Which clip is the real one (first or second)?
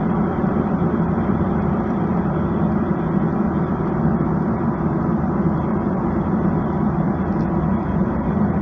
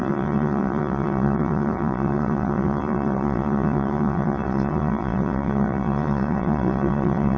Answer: first